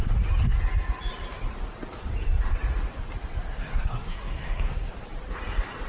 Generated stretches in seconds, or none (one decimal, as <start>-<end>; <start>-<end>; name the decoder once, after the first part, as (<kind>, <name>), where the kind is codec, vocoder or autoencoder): 3.5-4.9 (codec, SNAC)